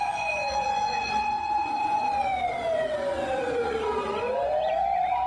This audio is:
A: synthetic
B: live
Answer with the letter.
A